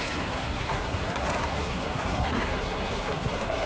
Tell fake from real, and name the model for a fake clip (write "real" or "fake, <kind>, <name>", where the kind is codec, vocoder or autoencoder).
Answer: fake, codec, SNAC